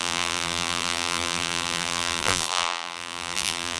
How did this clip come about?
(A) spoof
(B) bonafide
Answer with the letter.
A